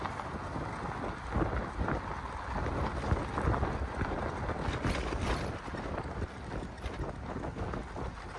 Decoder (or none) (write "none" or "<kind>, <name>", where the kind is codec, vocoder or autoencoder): none